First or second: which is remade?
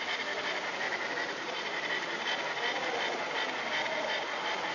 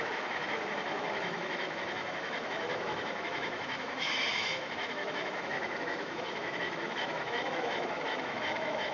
second